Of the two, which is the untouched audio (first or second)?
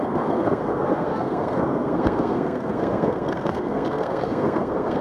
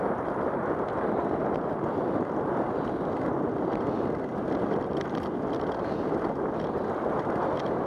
second